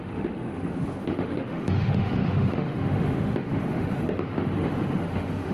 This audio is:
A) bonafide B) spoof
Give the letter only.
B